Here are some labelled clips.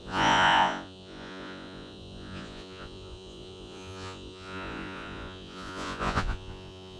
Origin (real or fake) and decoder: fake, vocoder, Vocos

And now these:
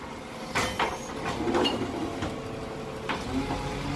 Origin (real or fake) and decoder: real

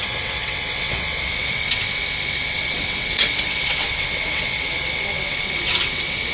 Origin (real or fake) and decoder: fake, vocoder, WaveNeXt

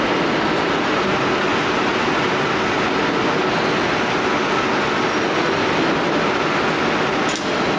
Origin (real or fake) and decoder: real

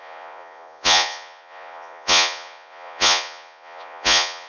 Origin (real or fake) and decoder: fake, vocoder, Vocos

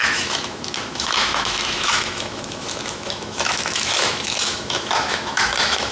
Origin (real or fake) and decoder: fake, autoencoder, DAC-VAE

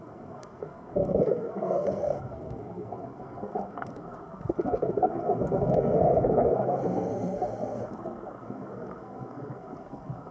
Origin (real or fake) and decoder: fake, codec, SNAC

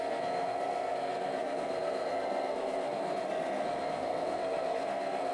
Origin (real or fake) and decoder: fake, codec, SNAC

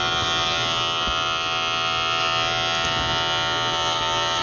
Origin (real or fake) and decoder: real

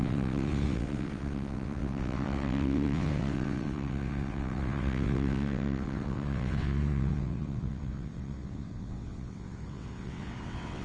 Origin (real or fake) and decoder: fake, vocoder, WaveNeXt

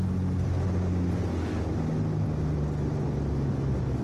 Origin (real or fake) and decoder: real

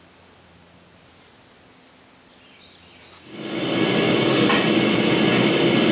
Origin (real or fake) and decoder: real